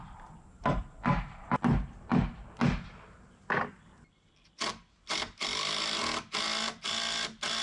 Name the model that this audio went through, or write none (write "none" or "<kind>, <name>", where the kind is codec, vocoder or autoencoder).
none